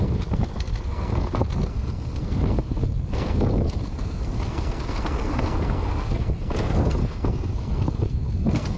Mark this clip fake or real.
fake